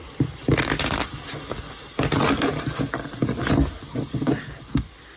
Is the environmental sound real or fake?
real